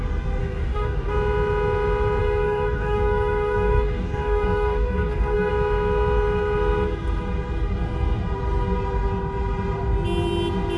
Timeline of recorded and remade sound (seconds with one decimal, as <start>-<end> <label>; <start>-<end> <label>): 0.0-0.4 recorded; 0.4-1.1 remade; 1.1-2.2 recorded; 2.2-5.5 remade; 5.5-10.8 recorded